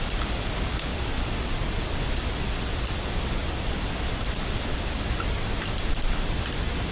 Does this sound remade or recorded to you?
recorded